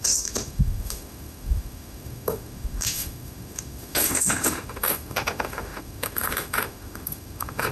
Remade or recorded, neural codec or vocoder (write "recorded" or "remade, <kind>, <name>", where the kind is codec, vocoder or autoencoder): remade, autoencoder, DAC-VAE